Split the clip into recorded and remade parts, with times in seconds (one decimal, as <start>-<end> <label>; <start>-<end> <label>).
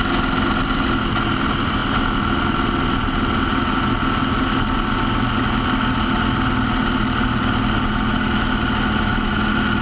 0.0-9.8 recorded